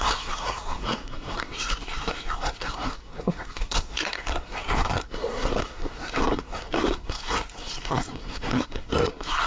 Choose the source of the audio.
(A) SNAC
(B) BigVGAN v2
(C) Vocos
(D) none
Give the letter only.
A